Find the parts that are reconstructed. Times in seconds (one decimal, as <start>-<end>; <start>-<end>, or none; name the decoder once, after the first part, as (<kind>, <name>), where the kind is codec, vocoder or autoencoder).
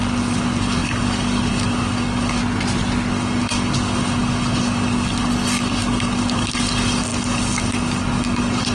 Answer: 0.0-2.4 (codec, DAC); 3.1-8.7